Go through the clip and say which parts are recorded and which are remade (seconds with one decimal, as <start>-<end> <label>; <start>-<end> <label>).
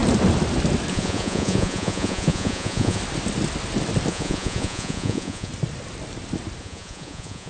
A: 0.0-0.9 recorded; 0.9-3.0 remade; 3.0-4.1 recorded; 4.1-5.5 remade; 5.5-6.6 recorded; 6.6-7.5 remade